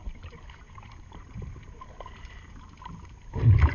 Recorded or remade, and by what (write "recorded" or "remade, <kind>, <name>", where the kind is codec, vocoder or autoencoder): recorded